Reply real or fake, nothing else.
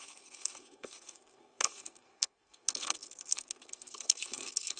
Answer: fake